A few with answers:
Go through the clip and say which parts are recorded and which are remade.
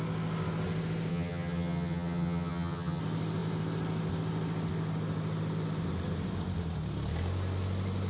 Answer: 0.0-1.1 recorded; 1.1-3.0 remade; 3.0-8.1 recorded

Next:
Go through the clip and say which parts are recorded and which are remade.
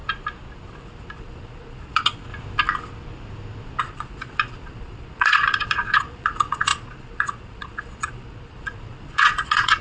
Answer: 0.0-1.2 recorded; 1.2-2.3 remade; 2.3-3.8 recorded; 3.8-9.8 remade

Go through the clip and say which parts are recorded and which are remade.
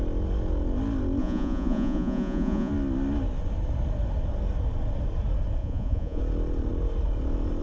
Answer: 0.0-1.2 recorded; 1.2-2.7 remade; 2.7-5.6 recorded; 5.6-6.2 remade; 6.2-7.6 recorded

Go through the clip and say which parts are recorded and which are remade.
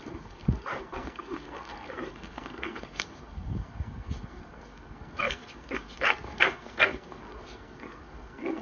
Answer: 0.0-8.6 remade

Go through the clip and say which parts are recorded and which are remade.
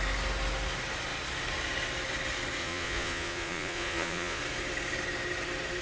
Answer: 0.0-2.6 recorded; 2.6-4.4 remade; 4.4-5.8 recorded